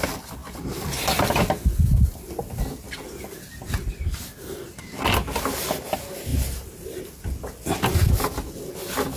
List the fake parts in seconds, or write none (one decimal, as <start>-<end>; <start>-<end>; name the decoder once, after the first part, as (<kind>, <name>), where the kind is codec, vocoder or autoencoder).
6.3-7.0 (vocoder, BigVGAN v2)